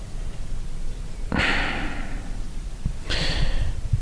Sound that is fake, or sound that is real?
real